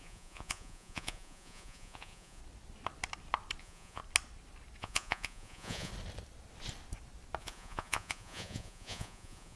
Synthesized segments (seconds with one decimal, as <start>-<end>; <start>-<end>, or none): 0.0-2.4; 3.6-4.0; 4.8-5.9; 7.4-9.6